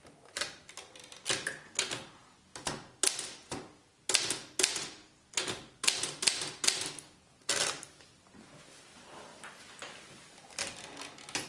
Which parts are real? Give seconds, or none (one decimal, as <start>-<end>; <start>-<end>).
0.0-11.5